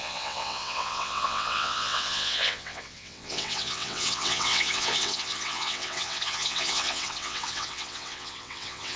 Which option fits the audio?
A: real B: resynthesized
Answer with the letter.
B